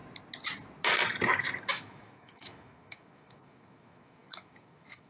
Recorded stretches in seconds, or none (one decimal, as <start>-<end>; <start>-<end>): 0.0-1.7